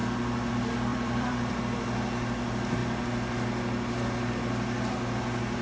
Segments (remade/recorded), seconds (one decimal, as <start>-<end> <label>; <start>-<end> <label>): 0.0-0.9 recorded; 0.9-1.6 remade; 1.6-5.6 recorded

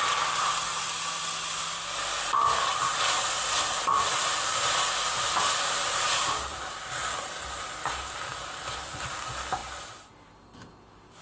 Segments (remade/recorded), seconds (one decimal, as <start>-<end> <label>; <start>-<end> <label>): 0.0-2.7 recorded; 2.7-6.6 remade; 6.6-11.2 recorded